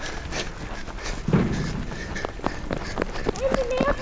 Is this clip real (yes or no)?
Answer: yes